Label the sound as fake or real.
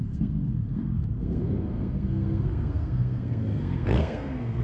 fake